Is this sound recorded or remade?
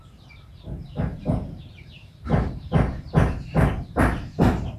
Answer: remade